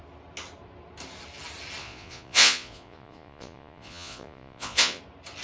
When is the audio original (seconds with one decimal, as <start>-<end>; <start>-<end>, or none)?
0.0-1.8; 5.0-5.4